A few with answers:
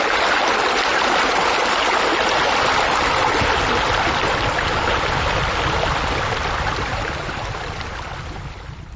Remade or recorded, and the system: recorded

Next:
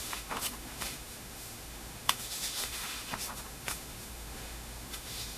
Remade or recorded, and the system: remade, autoencoder, DAC-VAE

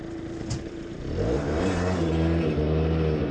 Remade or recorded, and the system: recorded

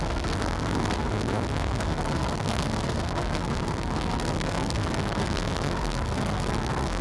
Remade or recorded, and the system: remade, codec, SNAC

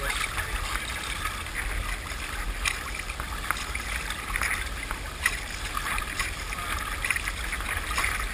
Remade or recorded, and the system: recorded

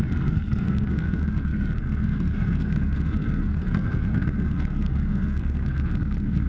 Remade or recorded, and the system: remade, codec, SNAC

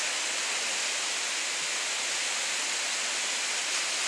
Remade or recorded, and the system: recorded